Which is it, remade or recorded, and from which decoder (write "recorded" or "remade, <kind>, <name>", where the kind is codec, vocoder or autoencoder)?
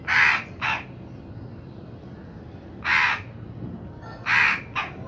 recorded